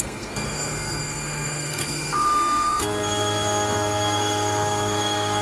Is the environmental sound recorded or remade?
remade